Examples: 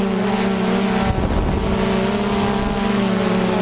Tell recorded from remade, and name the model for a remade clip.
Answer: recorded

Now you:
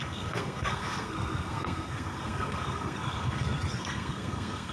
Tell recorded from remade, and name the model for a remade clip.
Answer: remade, codec, SNAC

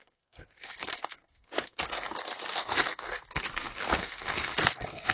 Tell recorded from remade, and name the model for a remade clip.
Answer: remade, codec, SNAC